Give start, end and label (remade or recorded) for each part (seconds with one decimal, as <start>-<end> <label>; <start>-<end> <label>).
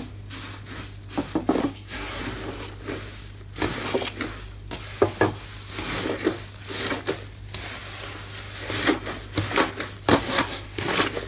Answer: 0.0-1.6 recorded; 1.6-2.2 remade; 2.2-10.1 recorded; 10.1-10.9 remade; 10.9-11.3 recorded